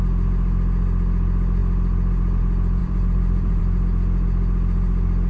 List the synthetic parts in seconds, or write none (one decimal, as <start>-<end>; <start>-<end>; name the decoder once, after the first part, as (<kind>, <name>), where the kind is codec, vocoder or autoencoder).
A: 2.8-3.6 (vocoder, BigVGAN v2)

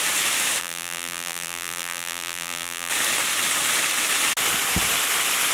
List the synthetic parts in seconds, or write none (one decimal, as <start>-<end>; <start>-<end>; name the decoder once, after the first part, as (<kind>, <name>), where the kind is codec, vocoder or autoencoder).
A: 0.6-2.9 (vocoder, BigVGAN v2)

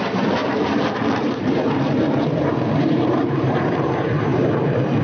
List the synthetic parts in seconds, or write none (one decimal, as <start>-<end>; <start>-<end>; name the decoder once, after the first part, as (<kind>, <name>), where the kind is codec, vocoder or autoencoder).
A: 0.0-5.0 (vocoder, BigVGAN v2)

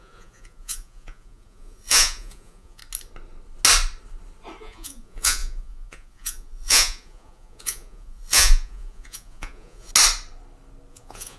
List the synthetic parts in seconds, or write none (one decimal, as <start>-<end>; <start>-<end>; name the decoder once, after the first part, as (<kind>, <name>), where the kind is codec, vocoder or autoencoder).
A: 0.0-2.8 (vocoder, Vocos); 4.6-9.9; 10.9-11.4

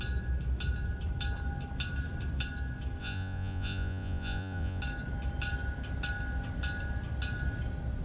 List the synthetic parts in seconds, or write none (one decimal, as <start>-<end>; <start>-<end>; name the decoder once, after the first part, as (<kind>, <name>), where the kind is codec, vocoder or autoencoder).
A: 3.0-4.8 (vocoder, Vocos)

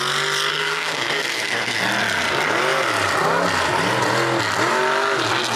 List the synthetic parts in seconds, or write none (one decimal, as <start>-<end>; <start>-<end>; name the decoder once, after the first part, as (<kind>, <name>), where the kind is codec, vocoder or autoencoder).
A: 0.5-1.8 (codec, SNAC)

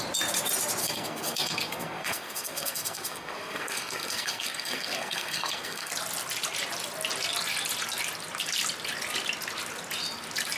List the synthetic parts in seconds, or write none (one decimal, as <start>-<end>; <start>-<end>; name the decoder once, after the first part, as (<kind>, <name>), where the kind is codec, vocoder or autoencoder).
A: 0.8-5.9 (codec, SNAC)

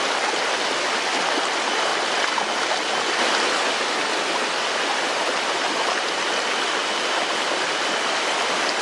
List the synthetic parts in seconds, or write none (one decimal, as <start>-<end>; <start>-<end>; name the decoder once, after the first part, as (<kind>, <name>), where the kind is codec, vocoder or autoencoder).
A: 4.9-6.1 (vocoder, BigVGAN v2)